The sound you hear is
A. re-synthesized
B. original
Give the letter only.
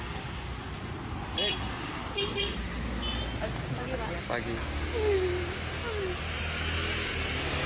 B